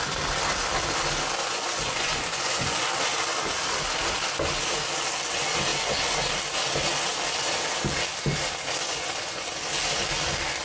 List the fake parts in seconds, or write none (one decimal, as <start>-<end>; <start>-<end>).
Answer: 1.4-2.9; 8.9-9.5